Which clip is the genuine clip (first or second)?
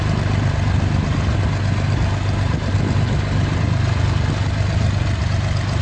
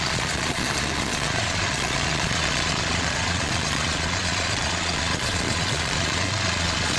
first